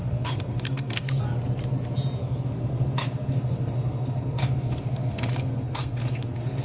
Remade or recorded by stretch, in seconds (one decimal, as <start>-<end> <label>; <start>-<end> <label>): 0.0-1.2 remade; 1.2-2.2 recorded; 2.2-6.6 remade